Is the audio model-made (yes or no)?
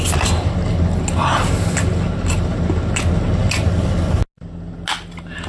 no